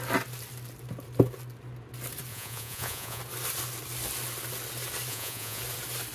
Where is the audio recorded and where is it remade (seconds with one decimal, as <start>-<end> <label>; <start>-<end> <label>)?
0.0-2.3 recorded; 2.3-3.2 remade; 3.2-5.1 recorded; 5.1-5.6 remade; 5.6-6.1 recorded

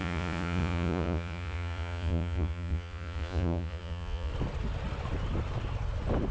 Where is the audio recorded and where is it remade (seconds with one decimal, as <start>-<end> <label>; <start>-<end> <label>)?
0.0-4.3 remade; 4.3-6.3 recorded